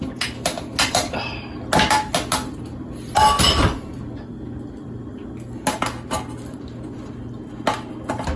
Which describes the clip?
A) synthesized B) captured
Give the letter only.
B